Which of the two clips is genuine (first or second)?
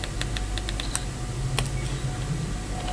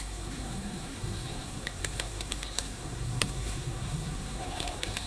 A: first